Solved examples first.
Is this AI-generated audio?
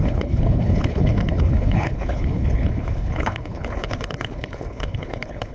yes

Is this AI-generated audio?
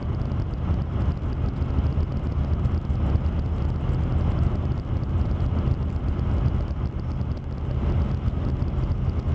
no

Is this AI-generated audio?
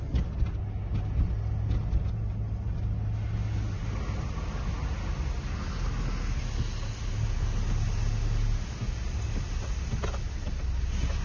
no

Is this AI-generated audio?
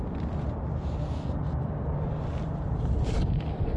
yes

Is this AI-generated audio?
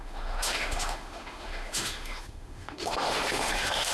yes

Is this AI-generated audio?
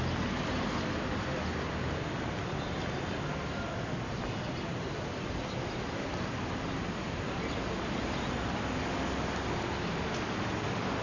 no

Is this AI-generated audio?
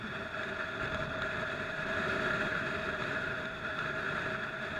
no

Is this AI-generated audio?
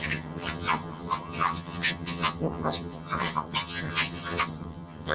yes